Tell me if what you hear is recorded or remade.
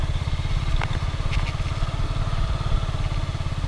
recorded